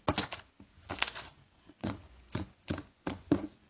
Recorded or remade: remade